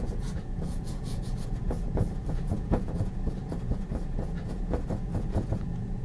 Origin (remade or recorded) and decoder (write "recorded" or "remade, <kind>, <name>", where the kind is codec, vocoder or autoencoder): remade, vocoder, Vocos